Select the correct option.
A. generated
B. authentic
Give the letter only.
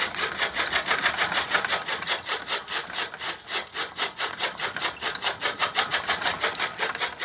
B